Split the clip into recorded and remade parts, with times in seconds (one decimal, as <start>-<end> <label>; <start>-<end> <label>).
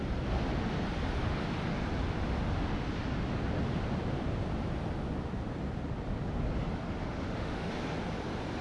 0.0-7.0 recorded; 7.0-7.7 remade; 7.7-8.6 recorded